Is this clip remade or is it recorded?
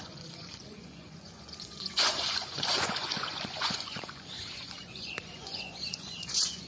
remade